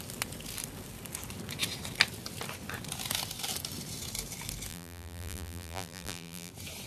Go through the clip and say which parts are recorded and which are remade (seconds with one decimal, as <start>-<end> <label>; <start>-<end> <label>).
0.0-4.7 recorded; 4.7-6.5 remade; 6.5-6.9 recorded